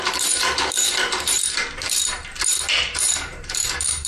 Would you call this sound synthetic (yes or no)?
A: yes